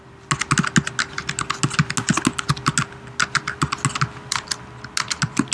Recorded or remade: recorded